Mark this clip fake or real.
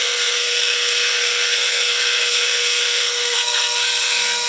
fake